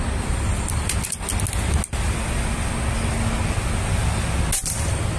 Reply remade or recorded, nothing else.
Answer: recorded